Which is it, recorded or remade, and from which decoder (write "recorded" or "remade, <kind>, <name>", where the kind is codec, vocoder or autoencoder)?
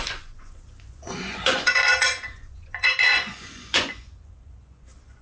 remade, vocoder, Vocos